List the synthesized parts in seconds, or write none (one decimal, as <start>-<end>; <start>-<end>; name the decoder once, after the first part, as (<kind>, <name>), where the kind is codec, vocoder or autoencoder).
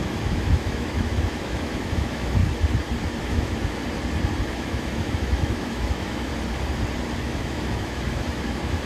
0.0-2.4 (autoencoder, DAC-VAE); 3.2-3.8; 4.5-6.3; 7.2-8.9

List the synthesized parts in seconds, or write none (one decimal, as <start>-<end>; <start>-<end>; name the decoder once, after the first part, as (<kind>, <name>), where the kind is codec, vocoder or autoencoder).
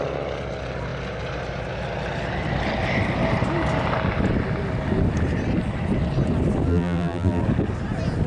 6.7-7.4 (vocoder, BigVGAN v2)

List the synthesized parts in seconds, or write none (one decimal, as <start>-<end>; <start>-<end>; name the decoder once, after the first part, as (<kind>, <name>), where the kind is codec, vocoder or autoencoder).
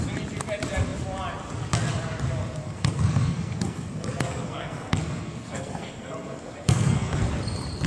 2.6-7.3 (codec, SNAC)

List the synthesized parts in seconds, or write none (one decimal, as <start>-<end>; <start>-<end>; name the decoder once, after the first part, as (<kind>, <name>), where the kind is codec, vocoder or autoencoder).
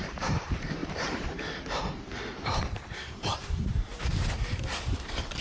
0.0-3.9 (vocoder, BigVGAN v2); 4.6-5.4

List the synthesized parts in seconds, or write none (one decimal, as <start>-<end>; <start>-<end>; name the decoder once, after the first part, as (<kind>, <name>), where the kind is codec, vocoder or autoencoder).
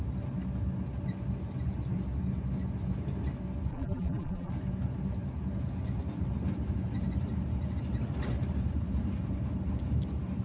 3.7-4.5 (vocoder, BigVGAN v2)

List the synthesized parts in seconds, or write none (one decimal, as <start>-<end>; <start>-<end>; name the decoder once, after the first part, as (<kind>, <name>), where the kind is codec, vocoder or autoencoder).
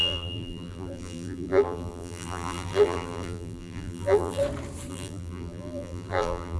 0.0-4.4 (vocoder, BigVGAN v2); 4.9-6.6